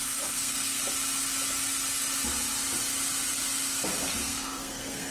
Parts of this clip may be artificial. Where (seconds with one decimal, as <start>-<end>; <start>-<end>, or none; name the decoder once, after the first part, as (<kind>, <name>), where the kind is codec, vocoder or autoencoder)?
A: 0.0-0.8 (codec, SNAC); 4.2-5.1